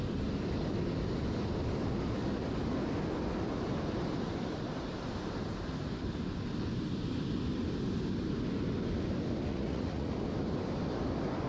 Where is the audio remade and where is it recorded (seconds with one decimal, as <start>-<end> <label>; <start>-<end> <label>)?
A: 0.0-9.5 recorded; 9.5-10.1 remade; 10.1-11.5 recorded